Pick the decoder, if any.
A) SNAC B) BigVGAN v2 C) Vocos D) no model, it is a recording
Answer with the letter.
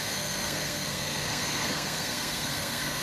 A